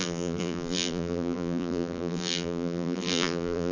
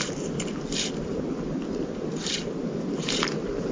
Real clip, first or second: second